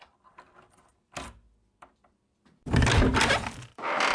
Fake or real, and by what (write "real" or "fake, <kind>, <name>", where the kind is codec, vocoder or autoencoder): real